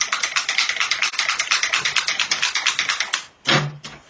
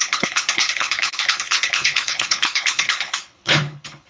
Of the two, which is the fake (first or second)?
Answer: second